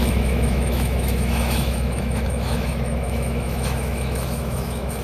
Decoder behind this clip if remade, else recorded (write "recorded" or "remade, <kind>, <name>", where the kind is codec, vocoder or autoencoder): remade, autoencoder, DAC-VAE